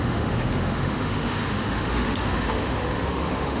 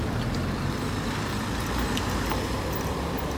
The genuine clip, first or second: second